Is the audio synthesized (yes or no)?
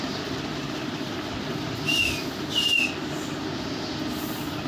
no